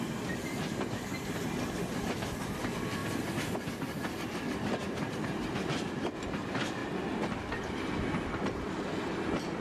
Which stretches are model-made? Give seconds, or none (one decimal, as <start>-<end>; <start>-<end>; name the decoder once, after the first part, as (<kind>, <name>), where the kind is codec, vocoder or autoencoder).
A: 3.0-3.7 (vocoder, BigVGAN v2)